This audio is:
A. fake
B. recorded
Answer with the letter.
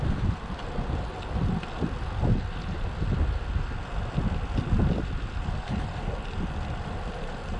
B